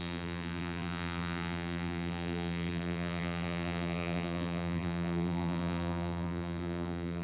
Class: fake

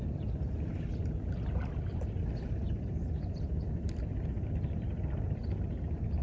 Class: real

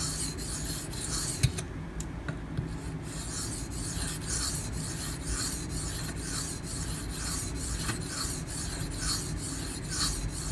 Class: real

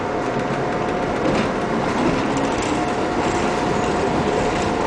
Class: real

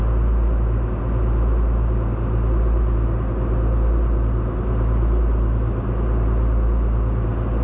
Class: real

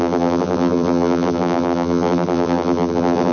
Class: fake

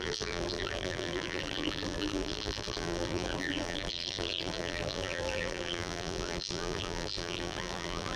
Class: fake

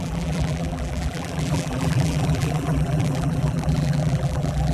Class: fake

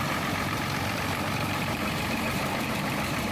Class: fake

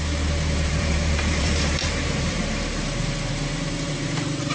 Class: fake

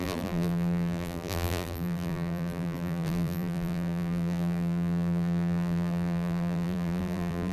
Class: fake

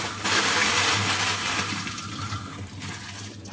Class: fake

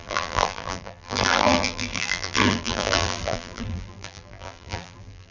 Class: fake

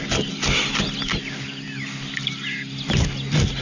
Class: real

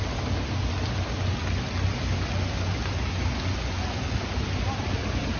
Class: real